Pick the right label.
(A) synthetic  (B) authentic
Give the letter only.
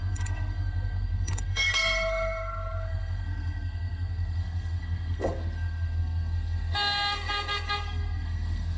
A